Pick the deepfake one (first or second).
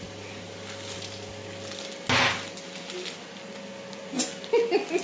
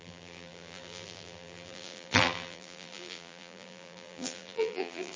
second